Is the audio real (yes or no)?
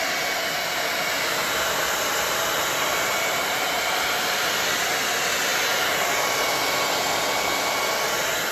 yes